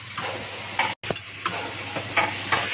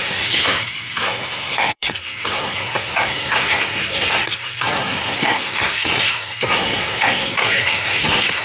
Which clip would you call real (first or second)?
first